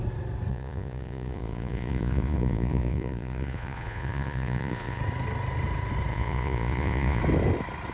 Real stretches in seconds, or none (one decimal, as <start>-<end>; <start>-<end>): 0.0-0.5; 5.0-6.1; 7.2-7.9